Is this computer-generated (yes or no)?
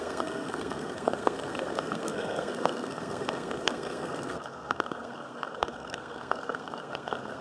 yes